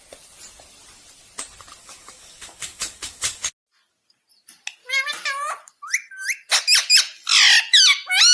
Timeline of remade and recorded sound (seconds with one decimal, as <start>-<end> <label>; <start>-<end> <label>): 0.0-1.8 recorded; 1.8-3.4 remade; 3.4-8.3 recorded